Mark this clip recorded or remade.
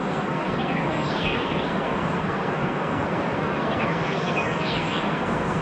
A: remade